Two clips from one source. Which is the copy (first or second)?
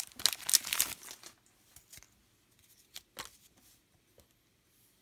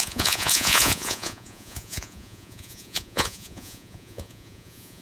second